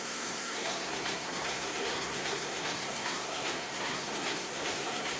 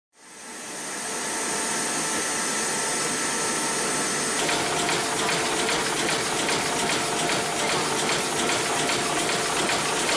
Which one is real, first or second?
second